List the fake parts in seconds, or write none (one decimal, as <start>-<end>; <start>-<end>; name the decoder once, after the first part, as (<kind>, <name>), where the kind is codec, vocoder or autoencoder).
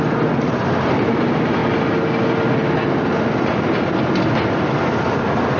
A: none